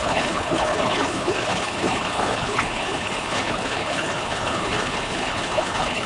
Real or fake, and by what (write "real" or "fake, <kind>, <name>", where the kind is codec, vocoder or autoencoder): fake, codec, HILCodec